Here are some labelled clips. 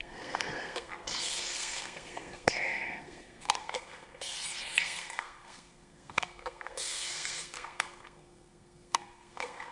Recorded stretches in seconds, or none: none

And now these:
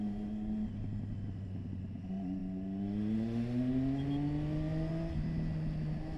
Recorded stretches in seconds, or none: 0.0-6.2

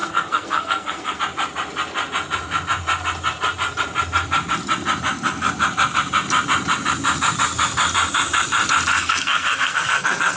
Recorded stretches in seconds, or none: 1.2-8.9

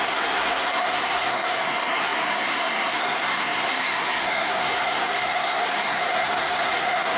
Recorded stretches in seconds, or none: none

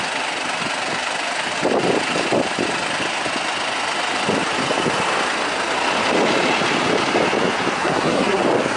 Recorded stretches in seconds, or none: 0.0-7.8; 8.4-8.8

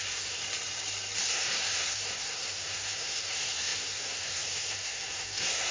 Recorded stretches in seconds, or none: 0.4-1.2

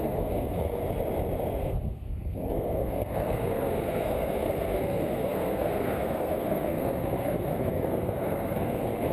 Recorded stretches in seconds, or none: 0.8-1.6